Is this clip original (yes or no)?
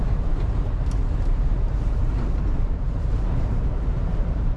no